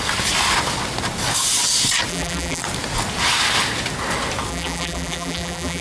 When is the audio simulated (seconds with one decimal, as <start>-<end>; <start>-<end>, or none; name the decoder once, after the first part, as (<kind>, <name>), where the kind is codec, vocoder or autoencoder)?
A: 2.1-2.6 (vocoder, BigVGAN v2); 4.5-5.8